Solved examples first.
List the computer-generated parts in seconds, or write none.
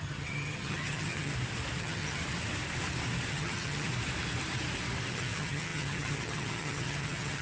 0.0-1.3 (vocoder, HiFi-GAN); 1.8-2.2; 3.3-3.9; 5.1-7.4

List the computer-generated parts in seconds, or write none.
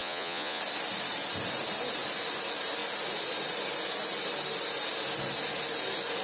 0.0-0.6 (vocoder, Vocos)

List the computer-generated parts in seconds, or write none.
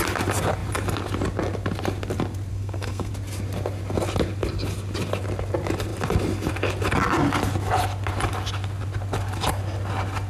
2.5-3.1 (codec, SNAC)